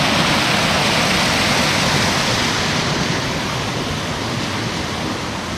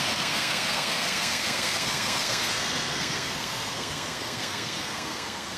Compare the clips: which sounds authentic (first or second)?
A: first